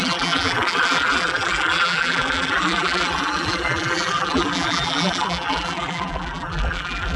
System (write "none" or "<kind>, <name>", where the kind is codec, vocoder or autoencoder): vocoder, BigVGAN v2